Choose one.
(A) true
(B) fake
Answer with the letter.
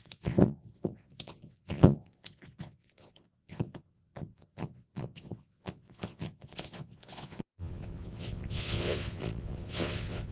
B